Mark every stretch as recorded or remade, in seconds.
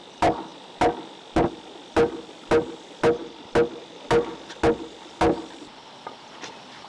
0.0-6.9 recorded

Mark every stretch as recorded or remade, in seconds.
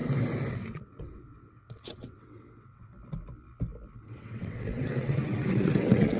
0.0-0.5 recorded; 0.5-2.9 remade; 2.9-4.0 recorded; 4.0-6.2 remade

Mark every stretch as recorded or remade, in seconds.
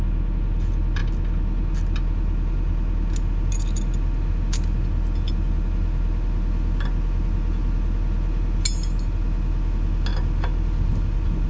0.0-11.5 recorded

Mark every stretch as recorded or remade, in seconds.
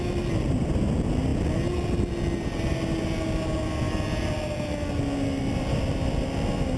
0.0-6.8 recorded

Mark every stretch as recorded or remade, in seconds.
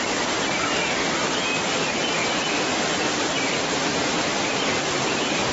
0.0-1.0 remade; 1.0-1.6 recorded; 1.6-2.2 remade; 2.2-3.3 recorded; 3.3-4.3 remade; 4.3-4.9 recorded; 4.9-5.5 remade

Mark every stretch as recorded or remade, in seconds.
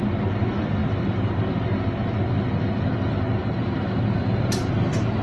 0.0-0.8 recorded; 0.8-1.3 remade; 1.3-3.4 recorded; 3.4-5.2 remade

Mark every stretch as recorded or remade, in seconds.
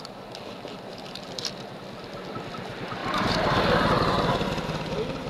0.0-3.0 recorded; 3.0-3.6 remade; 3.6-5.3 recorded